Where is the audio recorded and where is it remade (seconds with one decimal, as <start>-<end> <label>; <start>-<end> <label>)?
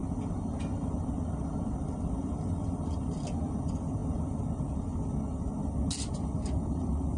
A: 0.0-7.2 recorded